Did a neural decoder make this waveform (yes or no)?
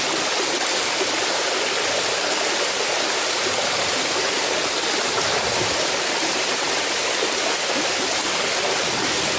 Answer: no